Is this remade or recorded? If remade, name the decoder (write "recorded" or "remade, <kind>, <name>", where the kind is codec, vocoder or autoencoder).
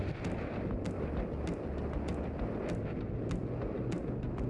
recorded